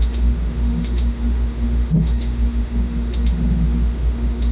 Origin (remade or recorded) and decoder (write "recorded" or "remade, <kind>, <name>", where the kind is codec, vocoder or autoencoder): remade, autoencoder, DAC-VAE